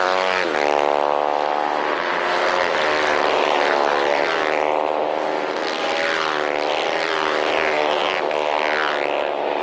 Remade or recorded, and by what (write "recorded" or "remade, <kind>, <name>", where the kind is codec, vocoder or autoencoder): remade, vocoder, BigVGAN v2